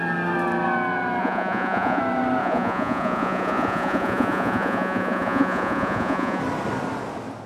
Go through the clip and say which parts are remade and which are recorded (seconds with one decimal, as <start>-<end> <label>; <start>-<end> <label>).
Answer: 0.0-1.2 recorded; 1.2-2.0 remade; 2.0-2.4 recorded; 2.4-6.4 remade; 6.4-7.5 recorded

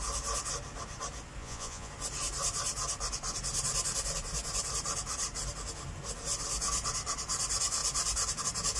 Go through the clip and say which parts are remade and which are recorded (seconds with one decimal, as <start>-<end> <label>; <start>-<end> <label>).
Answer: 0.0-1.4 recorded; 1.4-1.9 remade; 1.9-8.8 recorded

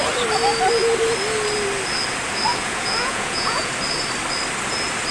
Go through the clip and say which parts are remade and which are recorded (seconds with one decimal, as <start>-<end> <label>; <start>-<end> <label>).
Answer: 0.0-2.5 recorded; 2.5-3.7 remade; 3.7-5.1 recorded

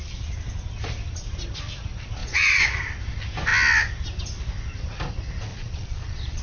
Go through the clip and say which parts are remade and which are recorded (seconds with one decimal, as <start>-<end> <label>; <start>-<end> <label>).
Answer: 0.0-2.2 recorded; 2.2-2.8 remade; 2.8-5.5 recorded; 5.5-6.4 remade